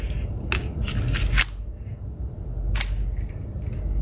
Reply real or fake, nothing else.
real